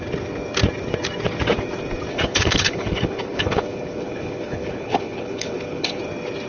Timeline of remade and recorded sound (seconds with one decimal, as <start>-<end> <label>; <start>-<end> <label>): 0.0-2.1 recorded; 2.1-6.0 remade; 6.0-6.5 recorded